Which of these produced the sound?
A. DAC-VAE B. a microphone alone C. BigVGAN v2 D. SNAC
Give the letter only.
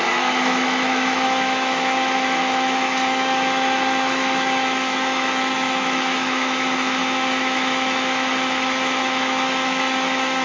A